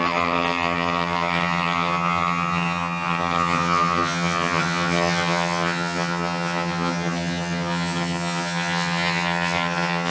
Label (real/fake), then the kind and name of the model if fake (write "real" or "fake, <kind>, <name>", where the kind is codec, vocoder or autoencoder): fake, vocoder, HiFi-GAN